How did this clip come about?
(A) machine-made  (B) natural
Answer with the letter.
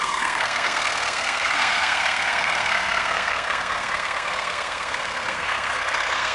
A